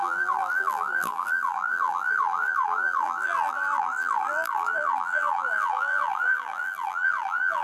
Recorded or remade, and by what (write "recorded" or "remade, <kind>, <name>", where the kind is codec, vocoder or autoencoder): remade, vocoder, BigVGAN v2